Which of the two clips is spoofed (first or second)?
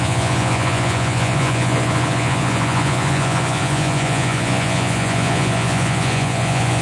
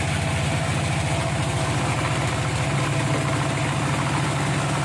first